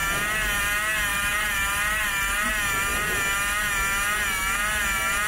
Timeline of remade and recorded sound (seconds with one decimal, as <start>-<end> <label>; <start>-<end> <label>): 0.0-1.1 recorded; 1.1-2.5 remade; 2.5-5.3 recorded